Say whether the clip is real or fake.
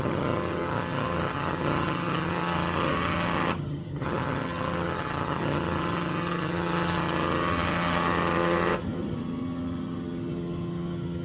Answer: fake